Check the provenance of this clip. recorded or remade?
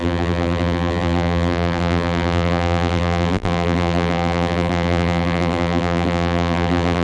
remade